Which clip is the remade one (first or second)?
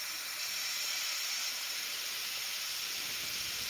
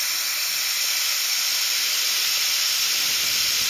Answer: first